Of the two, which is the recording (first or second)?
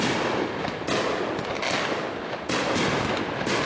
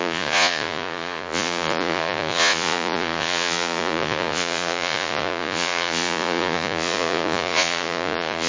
first